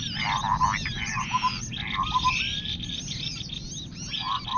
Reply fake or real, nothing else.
real